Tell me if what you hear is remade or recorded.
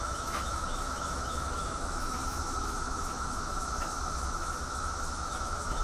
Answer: remade